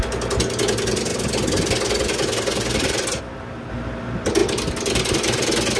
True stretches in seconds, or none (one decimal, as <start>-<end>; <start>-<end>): 0.0-5.8